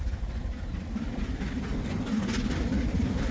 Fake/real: real